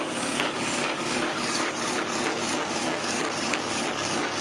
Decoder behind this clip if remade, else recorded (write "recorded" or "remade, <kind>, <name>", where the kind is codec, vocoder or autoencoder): remade, codec, DAC